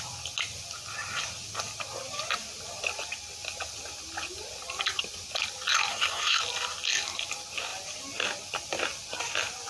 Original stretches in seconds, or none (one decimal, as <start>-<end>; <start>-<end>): 0.0-5.9; 6.4-9.7